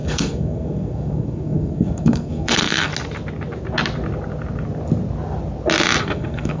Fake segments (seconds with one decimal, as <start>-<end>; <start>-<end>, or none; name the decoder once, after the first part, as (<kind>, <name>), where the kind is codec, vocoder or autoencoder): 0.0-2.9 (codec, SNAC); 6.0-6.6